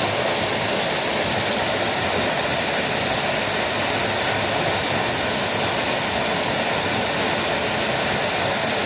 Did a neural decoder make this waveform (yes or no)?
no